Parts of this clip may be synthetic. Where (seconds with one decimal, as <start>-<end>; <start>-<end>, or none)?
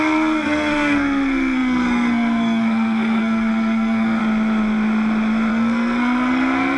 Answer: 0.0-4.2; 5.5-6.8